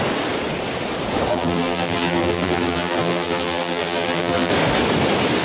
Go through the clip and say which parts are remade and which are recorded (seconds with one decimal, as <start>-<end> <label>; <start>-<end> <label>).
0.0-1.3 recorded; 1.3-4.5 remade; 4.5-5.4 recorded